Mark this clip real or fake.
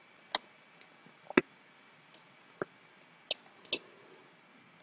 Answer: real